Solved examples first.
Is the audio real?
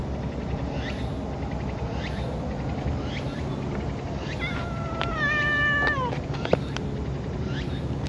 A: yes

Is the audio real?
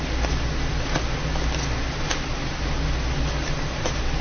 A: yes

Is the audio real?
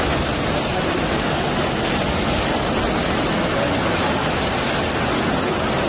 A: yes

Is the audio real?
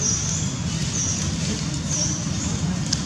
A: yes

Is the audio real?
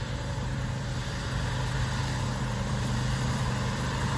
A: no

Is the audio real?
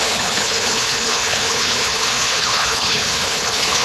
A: no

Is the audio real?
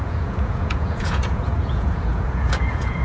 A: no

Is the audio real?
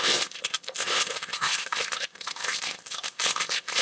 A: no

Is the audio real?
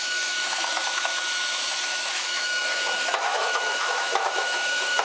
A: no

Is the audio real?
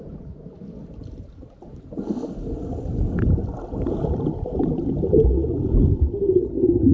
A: yes